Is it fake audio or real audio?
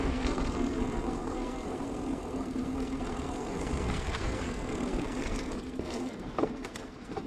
fake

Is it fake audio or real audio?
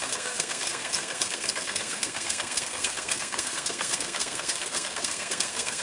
fake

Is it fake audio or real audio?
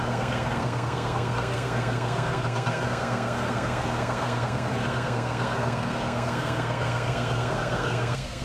fake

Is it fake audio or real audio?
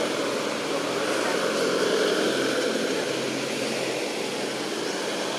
real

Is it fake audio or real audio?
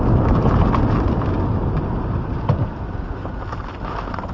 real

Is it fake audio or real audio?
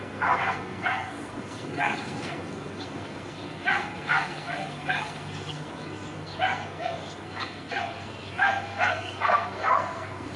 fake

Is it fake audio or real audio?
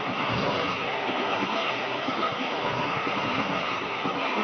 fake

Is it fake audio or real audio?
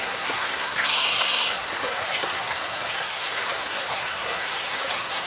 fake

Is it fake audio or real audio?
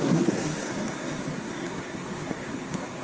fake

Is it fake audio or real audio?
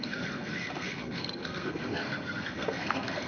fake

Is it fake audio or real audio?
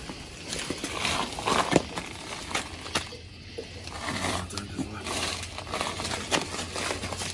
real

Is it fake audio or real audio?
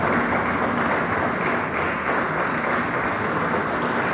real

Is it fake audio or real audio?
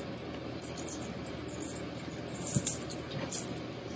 real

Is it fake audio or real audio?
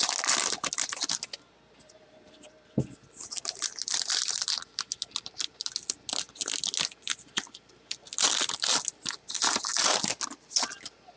real